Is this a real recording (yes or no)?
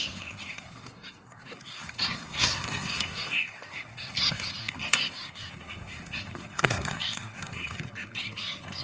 no